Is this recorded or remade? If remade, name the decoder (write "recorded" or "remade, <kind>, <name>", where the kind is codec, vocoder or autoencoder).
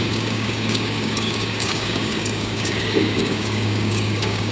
remade, codec, DAC